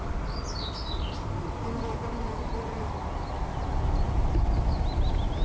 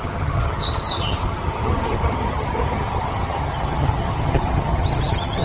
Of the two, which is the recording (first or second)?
first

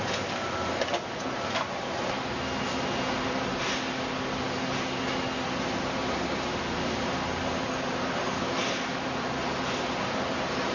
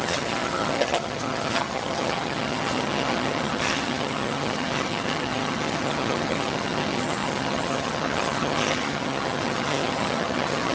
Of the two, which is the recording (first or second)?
first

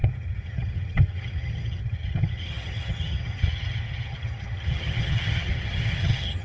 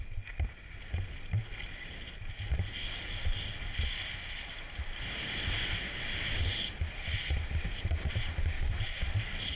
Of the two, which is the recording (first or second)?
second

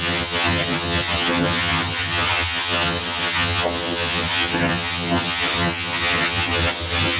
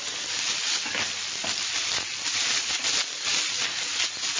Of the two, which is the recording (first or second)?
second